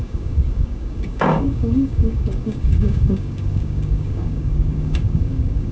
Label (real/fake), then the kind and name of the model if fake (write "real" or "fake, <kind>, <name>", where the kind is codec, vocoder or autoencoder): fake, codec, DAC